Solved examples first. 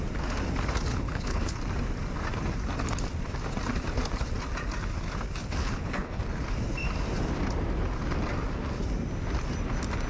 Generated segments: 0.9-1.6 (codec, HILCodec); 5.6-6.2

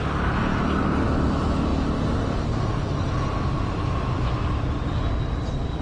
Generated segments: none

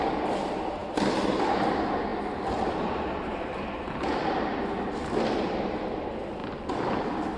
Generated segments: none